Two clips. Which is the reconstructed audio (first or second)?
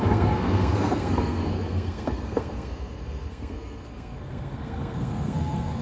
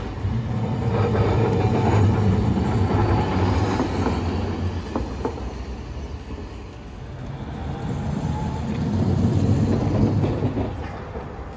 first